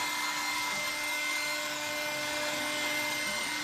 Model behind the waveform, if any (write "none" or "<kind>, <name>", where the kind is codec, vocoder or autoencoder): codec, DAC